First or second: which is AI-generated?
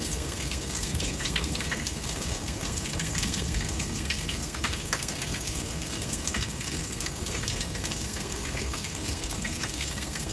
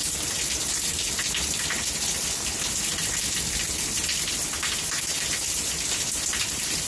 first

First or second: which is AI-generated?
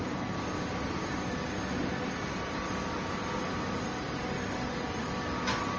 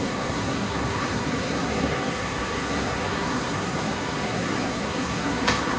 second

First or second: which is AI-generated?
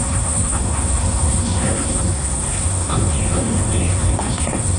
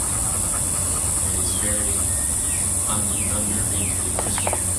first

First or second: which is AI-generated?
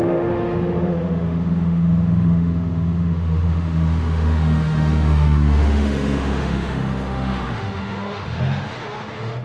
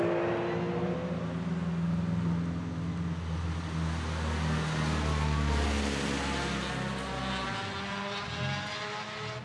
first